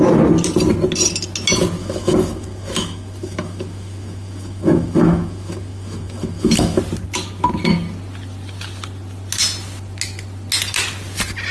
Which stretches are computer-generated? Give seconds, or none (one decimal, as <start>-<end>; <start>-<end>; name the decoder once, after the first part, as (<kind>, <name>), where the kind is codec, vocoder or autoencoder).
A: 1.8-6.8 (autoencoder, DAC-VAE)